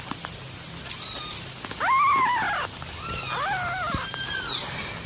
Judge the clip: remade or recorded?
recorded